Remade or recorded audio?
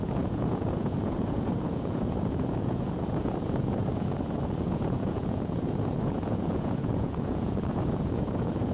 remade